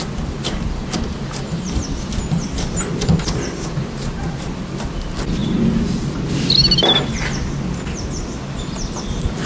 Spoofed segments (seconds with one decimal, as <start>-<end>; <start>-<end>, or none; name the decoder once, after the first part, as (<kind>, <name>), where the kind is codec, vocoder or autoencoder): none